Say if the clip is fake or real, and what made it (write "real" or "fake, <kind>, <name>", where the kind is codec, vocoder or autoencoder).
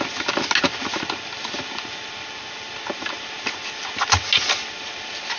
real